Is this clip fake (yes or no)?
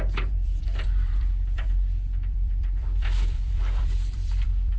yes